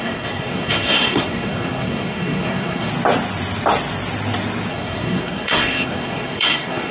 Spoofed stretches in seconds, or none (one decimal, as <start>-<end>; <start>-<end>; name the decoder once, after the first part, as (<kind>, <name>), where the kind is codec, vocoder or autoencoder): 0.0-2.9 (codec, SNAC); 4.7-6.9